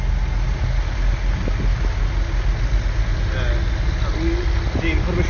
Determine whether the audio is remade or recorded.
recorded